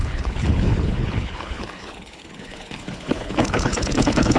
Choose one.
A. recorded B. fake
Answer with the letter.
B